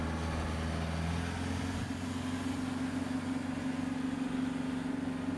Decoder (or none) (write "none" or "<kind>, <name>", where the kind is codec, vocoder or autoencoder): none